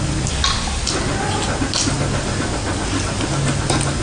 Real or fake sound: real